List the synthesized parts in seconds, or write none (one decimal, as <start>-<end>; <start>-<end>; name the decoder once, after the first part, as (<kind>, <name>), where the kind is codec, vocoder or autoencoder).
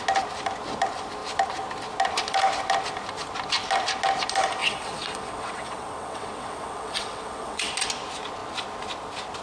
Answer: 4.6-7.7 (vocoder, WaveNeXt)